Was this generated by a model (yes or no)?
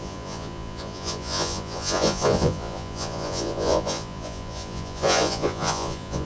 yes